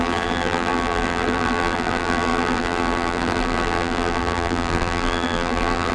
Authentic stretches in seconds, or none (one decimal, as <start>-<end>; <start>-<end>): none